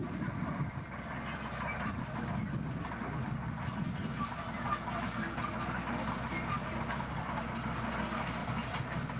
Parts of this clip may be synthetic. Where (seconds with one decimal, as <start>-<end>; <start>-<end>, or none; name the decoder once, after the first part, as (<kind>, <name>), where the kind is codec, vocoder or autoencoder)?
none